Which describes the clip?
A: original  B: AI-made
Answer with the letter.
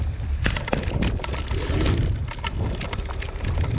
A